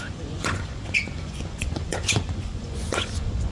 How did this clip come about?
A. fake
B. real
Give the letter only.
A